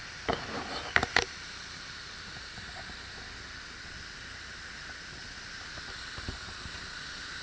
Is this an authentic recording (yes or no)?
yes